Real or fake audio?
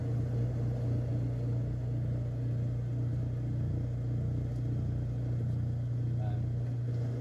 real